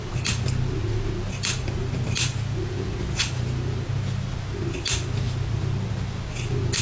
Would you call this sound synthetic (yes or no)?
no